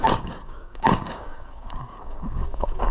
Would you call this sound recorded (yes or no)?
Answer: no